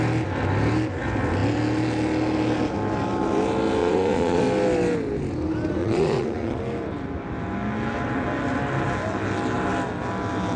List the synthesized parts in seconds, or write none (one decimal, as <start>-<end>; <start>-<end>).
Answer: 3.8-4.4; 5.8-6.6